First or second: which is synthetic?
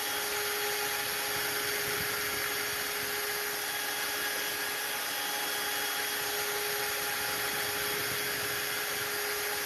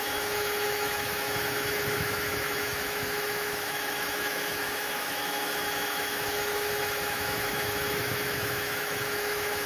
second